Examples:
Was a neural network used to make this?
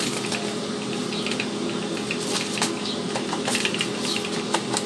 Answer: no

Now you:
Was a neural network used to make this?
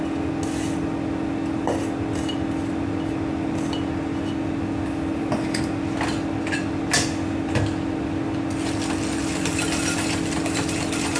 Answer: no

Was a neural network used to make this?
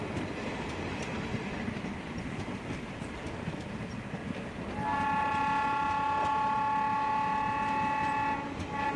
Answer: no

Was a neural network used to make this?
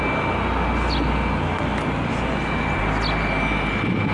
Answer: no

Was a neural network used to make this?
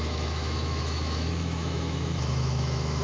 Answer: yes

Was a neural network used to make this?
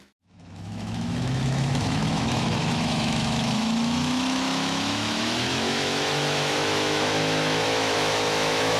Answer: yes